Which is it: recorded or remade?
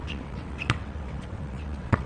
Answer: remade